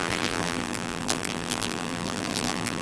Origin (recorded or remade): remade